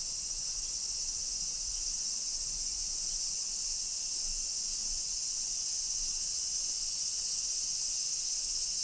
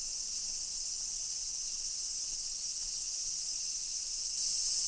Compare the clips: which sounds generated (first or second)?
first